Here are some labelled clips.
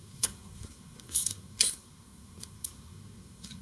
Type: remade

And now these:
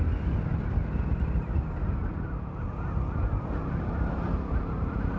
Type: recorded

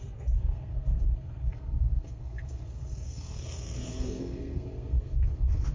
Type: remade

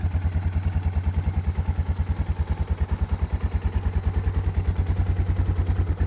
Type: recorded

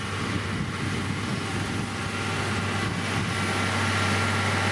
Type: recorded